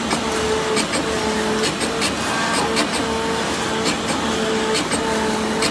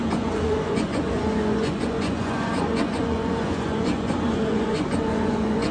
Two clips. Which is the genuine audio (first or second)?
first